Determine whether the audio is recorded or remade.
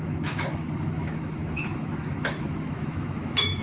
remade